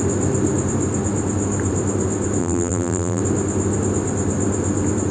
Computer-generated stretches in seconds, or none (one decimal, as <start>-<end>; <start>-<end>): 2.4-3.2